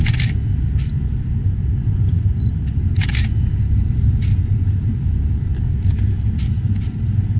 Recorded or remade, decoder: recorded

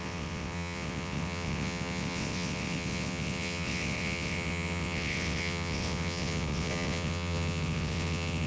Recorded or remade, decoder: remade, vocoder, WaveNeXt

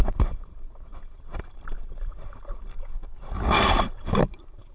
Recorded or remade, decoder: recorded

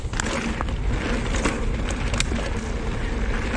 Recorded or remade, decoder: recorded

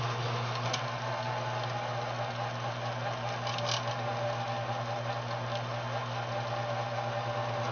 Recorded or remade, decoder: recorded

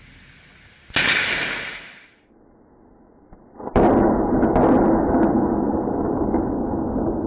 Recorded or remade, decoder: recorded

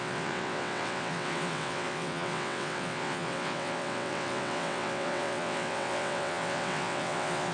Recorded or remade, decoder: remade, vocoder, WaveNeXt